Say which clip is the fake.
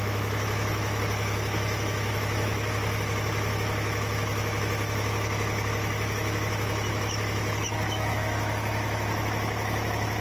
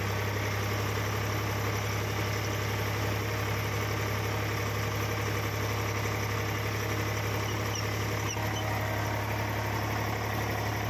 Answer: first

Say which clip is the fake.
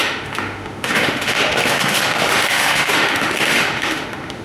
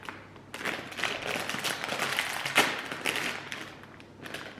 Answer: first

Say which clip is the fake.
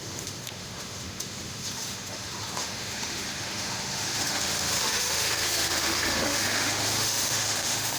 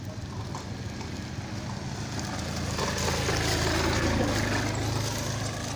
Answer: first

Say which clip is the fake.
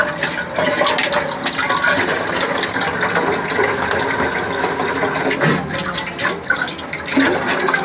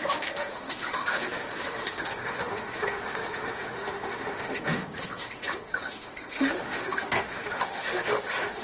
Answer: second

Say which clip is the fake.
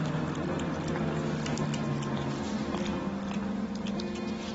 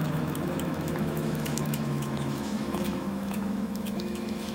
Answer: second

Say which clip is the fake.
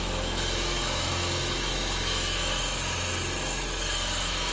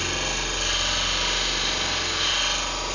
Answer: first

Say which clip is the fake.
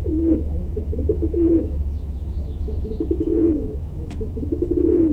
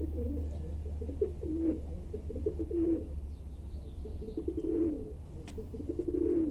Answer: first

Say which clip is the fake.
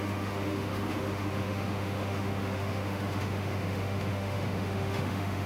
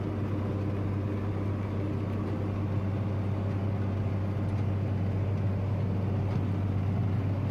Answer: first